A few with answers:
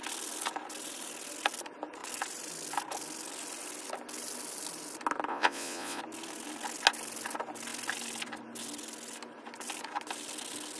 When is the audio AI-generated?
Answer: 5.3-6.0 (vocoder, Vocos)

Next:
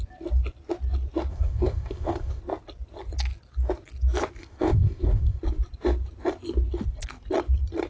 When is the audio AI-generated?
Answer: 1.3-2.4 (codec, ZipCodec); 4.4-5.4

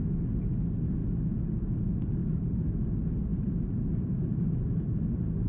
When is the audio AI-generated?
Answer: 2.2-2.8 (vocoder, BigVGAN v2); 3.3-5.5

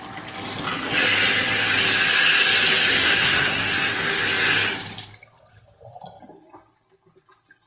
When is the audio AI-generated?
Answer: 2.9-3.9 (codec, SNAC)

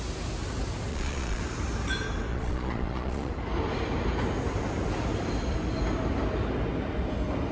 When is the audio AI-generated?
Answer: 0.9-1.4 (vocoder, Vocos); 2.3-3.3

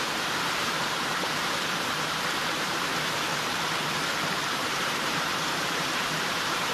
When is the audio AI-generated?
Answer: 0.0-2.9 (vocoder, BigVGAN v2); 4.5-6.7

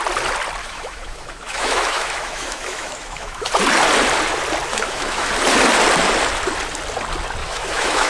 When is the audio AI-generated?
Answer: 0.6-3.5 (autoencoder, DAC-VAE); 4.7-5.3; 7.4-8.1